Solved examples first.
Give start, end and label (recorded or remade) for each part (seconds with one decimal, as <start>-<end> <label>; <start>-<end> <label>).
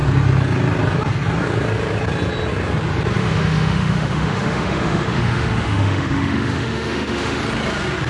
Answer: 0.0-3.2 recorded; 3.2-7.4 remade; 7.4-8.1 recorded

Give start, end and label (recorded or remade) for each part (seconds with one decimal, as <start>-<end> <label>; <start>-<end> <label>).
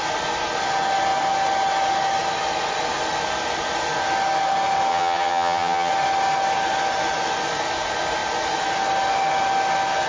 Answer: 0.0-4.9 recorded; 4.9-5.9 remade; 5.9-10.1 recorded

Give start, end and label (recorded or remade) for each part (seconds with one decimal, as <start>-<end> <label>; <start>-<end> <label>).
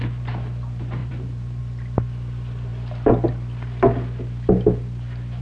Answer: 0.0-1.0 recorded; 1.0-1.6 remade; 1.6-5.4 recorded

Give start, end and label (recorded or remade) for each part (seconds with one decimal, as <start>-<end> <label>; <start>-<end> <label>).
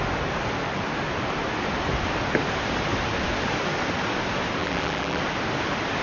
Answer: 0.0-4.6 recorded; 4.6-5.2 remade; 5.2-6.0 recorded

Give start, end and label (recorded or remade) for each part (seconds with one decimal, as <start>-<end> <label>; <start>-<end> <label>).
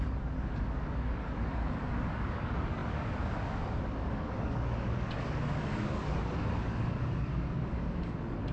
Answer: 0.0-8.5 remade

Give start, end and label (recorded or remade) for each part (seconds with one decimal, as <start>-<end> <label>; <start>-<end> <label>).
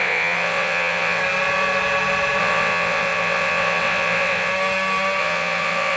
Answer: 0.0-1.2 remade; 1.2-2.4 recorded; 2.4-4.5 remade; 4.5-5.2 recorded; 5.2-6.0 remade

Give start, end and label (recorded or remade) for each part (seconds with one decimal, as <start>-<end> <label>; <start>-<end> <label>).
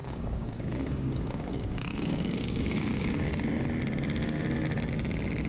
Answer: 0.0-3.3 remade; 3.3-5.5 recorded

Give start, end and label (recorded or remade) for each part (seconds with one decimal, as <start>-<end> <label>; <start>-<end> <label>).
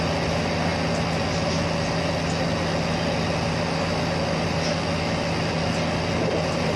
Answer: 0.0-6.8 recorded